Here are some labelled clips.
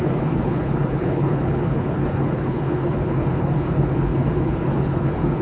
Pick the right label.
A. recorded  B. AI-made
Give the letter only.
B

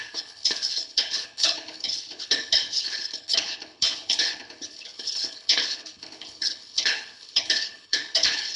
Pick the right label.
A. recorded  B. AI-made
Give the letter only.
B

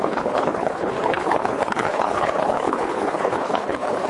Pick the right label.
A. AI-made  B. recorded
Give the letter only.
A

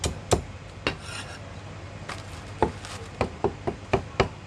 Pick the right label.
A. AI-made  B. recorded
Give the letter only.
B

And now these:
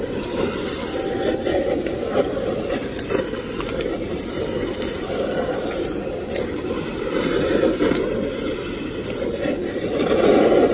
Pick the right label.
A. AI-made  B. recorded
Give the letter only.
B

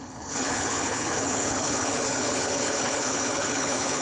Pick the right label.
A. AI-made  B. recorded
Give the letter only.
A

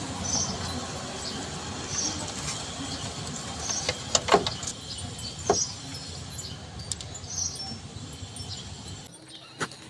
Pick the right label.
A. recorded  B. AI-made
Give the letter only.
A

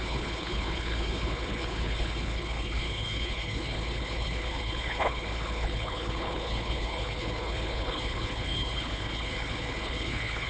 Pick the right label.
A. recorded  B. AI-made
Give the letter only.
B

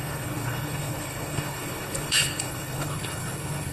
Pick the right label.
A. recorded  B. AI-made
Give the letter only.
B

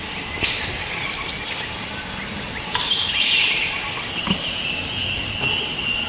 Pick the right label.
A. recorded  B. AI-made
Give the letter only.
A